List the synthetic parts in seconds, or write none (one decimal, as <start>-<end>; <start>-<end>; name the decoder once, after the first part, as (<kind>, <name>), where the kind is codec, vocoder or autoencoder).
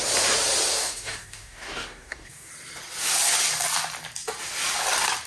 0.7-2.5 (codec, DAC)